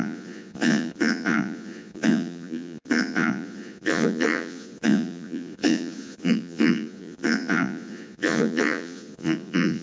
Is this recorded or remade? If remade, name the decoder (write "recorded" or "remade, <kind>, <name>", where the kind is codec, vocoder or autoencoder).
remade, vocoder, Vocos